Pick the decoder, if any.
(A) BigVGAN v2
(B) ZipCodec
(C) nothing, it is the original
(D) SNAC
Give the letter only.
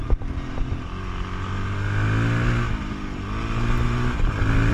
C